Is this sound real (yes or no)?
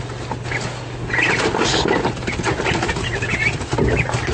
yes